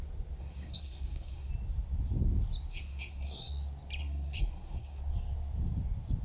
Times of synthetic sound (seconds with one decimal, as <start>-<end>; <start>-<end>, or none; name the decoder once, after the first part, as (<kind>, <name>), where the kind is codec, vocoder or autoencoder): 0.4-1.5 (codec, SNAC); 2.7-3.5; 4.0-5.0